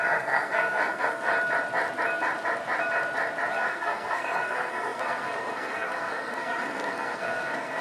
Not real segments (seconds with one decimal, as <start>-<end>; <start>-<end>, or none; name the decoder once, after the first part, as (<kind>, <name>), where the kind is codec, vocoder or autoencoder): 0.0-1.3 (codec, SNAC); 3.5-7.8